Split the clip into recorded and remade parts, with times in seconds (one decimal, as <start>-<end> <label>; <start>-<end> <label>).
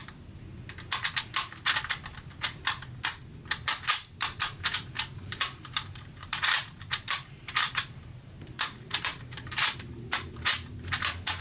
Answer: 0.0-4.2 recorded; 4.2-11.4 remade